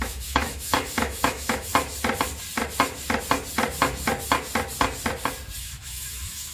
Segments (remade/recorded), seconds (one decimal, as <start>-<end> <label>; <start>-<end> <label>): 0.0-1.7 remade; 1.7-5.6 recorded; 5.6-6.5 remade